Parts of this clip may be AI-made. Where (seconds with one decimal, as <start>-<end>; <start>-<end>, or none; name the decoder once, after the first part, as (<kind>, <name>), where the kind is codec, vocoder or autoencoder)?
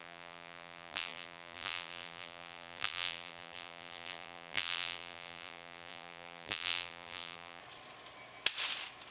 0.0-7.6 (vocoder, BigVGAN v2)